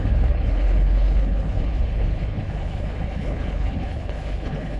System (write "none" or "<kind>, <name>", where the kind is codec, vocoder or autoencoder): codec, HILCodec